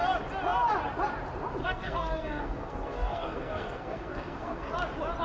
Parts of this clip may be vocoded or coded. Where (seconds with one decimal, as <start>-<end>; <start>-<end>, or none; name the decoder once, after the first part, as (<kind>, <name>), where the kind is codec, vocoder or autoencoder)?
1.6-4.7 (codec, SNAC)